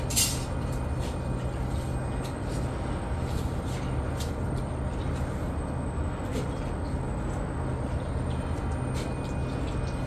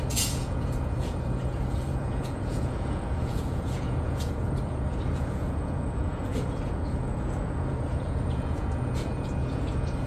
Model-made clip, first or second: second